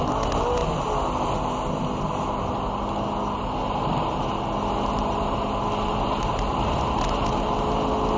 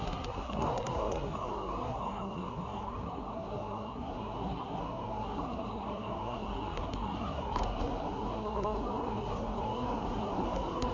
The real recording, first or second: first